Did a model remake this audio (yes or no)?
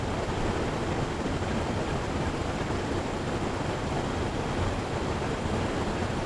no